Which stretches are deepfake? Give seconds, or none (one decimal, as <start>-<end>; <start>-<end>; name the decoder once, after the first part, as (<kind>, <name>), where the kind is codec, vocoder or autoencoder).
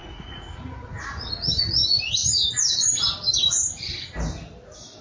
0.0-1.3 (vocoder, Vocos)